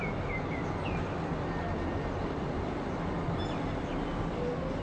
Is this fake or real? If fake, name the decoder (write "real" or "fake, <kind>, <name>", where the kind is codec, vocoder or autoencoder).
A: real